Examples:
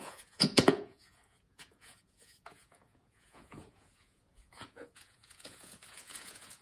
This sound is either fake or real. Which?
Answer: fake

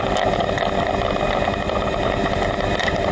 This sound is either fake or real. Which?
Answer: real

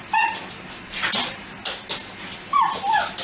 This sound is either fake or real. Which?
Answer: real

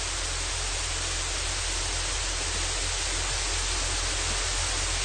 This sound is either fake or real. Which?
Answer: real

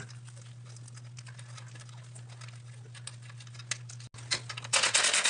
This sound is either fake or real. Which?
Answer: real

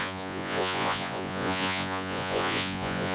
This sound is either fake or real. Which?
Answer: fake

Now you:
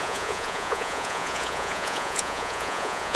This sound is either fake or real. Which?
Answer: fake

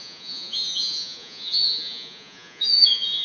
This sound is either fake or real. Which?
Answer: fake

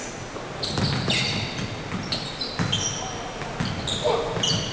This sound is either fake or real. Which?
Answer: real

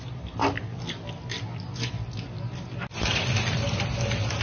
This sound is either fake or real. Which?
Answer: real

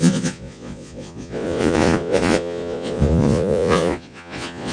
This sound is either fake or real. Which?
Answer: fake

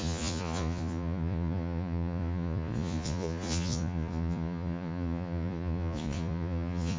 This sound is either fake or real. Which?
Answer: fake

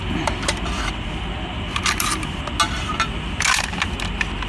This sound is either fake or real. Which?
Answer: real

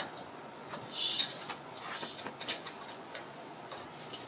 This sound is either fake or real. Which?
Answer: fake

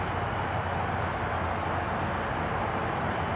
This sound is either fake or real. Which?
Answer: real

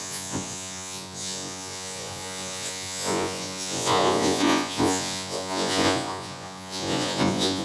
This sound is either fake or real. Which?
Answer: fake